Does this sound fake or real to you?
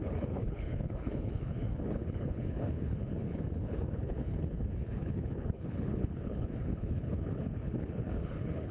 fake